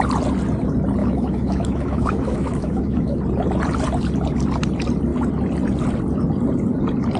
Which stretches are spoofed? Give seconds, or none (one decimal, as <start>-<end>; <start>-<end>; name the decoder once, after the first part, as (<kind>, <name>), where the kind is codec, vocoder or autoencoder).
1.0-3.2 (autoencoder, DAC-VAE)